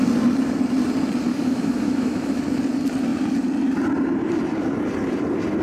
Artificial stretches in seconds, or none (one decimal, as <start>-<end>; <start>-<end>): 1.3-2.4